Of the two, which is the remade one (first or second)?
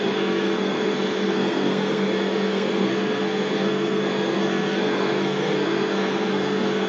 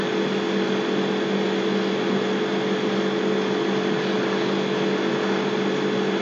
first